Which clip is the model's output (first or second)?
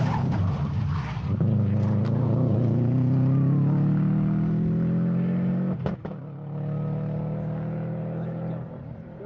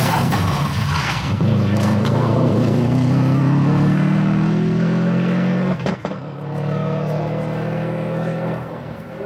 second